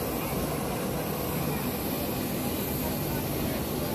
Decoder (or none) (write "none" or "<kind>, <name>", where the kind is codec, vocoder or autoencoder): none